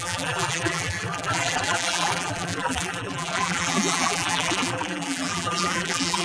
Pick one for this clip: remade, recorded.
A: remade